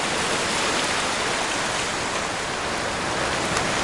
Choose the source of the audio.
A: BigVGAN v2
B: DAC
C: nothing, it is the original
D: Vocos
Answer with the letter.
C